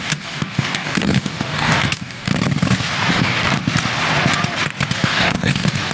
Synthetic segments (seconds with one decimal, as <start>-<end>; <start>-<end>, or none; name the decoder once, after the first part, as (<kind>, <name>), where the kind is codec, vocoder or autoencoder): 0.0-2.3 (codec, DAC); 3.1-3.6; 5.0-5.9